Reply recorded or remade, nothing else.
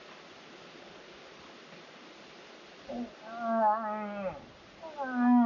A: recorded